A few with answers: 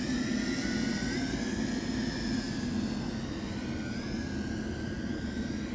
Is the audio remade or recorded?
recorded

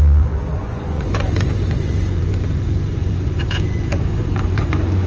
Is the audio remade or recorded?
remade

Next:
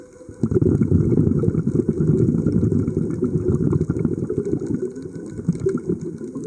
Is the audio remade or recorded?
recorded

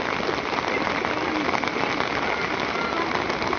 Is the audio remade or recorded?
recorded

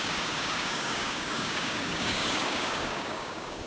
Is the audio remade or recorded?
remade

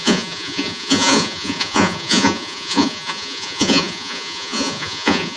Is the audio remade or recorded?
remade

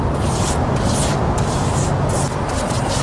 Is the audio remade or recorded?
recorded